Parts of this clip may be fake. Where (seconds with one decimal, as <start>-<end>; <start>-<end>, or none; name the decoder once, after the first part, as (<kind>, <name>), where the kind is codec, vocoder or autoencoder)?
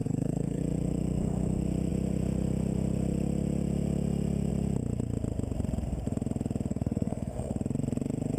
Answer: 0.0-0.6 (codec, SNAC); 6.7-7.5